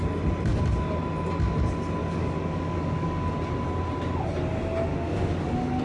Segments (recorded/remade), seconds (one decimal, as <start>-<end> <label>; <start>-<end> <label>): 0.0-2.0 recorded; 2.0-3.3 remade; 3.3-4.9 recorded; 4.9-5.8 remade